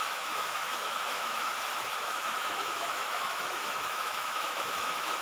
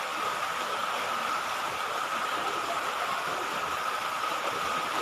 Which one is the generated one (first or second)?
first